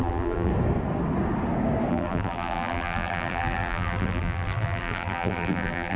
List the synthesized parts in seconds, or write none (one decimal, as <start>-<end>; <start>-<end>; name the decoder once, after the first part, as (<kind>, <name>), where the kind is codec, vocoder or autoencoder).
0.0-0.5 (vocoder, BigVGAN v2); 1.9-6.0